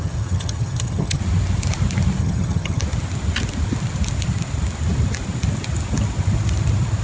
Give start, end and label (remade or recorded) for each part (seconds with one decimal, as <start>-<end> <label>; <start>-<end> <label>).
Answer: 0.0-1.2 remade; 1.2-2.2 recorded; 2.2-2.8 remade; 2.8-7.0 recorded